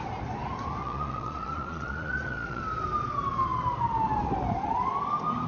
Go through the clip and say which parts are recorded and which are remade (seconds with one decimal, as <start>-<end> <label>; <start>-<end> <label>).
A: 0.0-0.8 recorded; 0.8-2.6 remade; 2.6-5.5 recorded

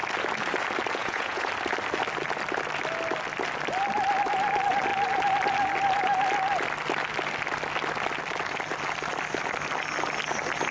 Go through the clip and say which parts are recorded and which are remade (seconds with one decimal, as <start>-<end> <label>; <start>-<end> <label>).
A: 0.0-1.0 recorded; 1.0-1.5 remade; 1.5-10.7 recorded

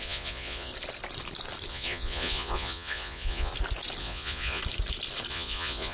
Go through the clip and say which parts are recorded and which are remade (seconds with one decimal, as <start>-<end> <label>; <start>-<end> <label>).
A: 0.0-0.7 remade; 0.7-1.7 recorded; 1.7-3.5 remade; 3.5-4.0 recorded; 4.0-4.6 remade; 4.6-5.3 recorded; 5.3-5.9 remade

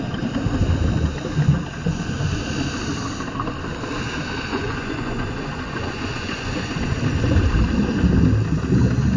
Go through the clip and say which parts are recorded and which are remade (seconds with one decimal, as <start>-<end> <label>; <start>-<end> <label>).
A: 0.0-1.8 recorded; 1.8-2.4 remade; 2.4-4.5 recorded; 4.5-7.0 remade; 7.0-9.2 recorded

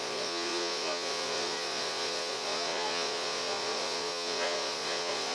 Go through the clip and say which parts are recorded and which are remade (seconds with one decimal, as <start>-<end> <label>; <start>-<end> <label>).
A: 0.0-5.3 remade